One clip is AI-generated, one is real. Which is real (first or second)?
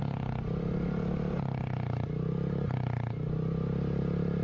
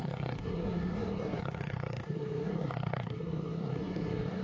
first